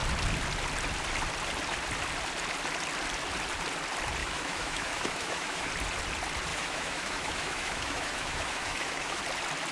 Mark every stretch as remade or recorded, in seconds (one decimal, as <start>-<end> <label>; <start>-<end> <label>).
0.0-4.2 recorded; 4.2-5.7 remade; 5.7-6.5 recorded; 6.5-9.2 remade; 9.2-9.7 recorded